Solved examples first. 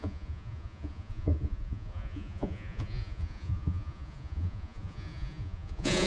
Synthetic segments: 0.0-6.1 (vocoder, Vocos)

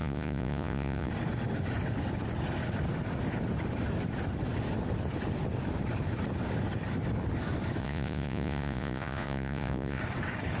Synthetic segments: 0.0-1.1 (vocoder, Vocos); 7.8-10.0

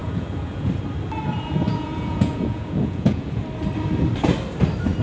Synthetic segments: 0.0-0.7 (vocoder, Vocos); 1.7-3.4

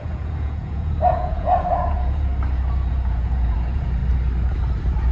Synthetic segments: 0.0-2.3 (vocoder, Vocos); 2.9-4.0

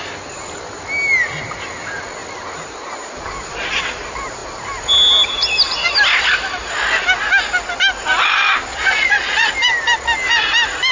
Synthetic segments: 8.7-9.5 (vocoder, Vocos)